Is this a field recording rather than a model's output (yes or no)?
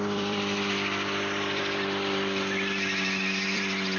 no